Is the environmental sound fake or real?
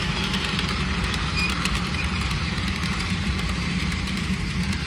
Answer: fake